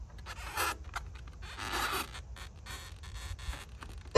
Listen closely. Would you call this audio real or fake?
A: real